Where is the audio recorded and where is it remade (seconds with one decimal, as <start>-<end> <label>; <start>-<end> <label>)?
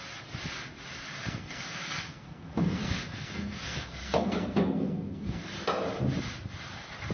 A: 0.0-1.2 recorded; 1.2-5.5 remade; 5.5-7.1 recorded